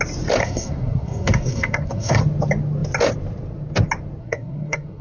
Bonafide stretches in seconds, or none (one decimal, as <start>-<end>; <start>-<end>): 0.0-0.4; 2.2-4.2